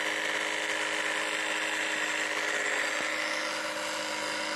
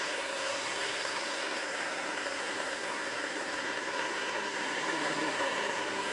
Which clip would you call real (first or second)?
first